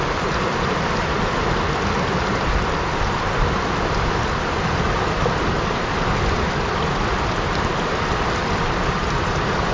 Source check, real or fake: real